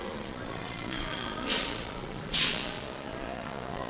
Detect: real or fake fake